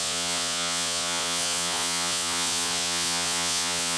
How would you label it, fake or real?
fake